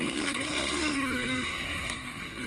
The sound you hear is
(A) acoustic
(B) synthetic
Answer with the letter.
B